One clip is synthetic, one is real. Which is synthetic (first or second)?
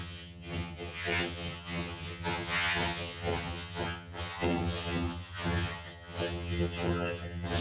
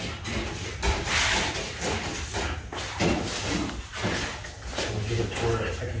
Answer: first